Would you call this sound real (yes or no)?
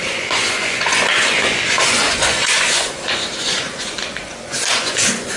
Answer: no